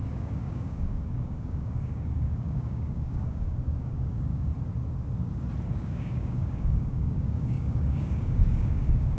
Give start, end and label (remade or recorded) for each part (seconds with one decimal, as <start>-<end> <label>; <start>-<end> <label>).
0.0-4.5 remade; 4.5-5.7 recorded; 5.7-9.2 remade